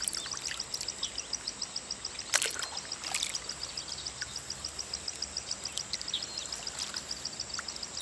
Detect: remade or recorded recorded